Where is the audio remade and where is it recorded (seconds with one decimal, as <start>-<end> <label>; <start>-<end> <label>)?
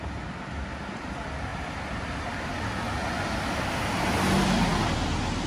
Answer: 0.0-5.5 recorded